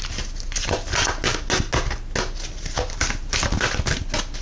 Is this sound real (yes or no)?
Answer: yes